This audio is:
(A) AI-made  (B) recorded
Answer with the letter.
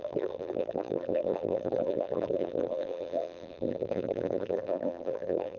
A